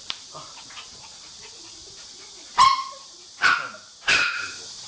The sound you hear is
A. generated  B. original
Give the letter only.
A